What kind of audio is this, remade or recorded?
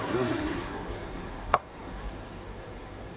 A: remade